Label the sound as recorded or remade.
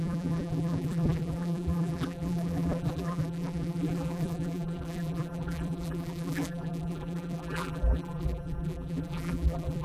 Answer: remade